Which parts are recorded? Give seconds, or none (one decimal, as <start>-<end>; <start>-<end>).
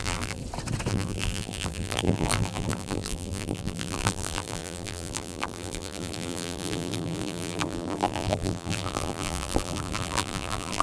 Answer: 0.4-0.9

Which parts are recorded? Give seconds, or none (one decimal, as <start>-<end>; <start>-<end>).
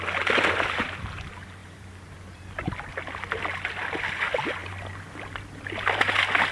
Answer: 0.0-1.6; 2.9-6.5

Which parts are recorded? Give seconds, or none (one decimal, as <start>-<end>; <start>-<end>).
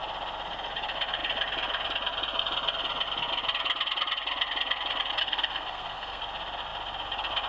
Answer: 0.0-5.2; 6.2-7.5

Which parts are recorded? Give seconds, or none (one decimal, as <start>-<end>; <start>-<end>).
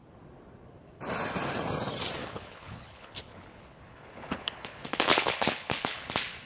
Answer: 0.0-2.2; 6.1-6.5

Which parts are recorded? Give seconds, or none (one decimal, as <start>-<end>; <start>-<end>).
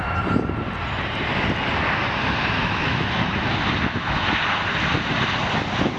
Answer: 0.0-2.6; 3.5-6.0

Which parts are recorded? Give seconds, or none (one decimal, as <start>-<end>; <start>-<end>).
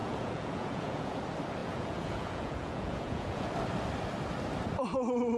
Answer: 1.2-1.6; 3.5-5.4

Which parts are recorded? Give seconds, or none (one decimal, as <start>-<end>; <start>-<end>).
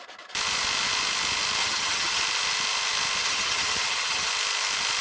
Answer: 0.0-1.6; 2.2-3.2; 4.3-5.0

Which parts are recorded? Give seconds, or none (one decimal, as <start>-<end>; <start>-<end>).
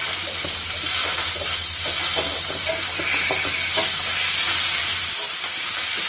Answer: 0.0-6.1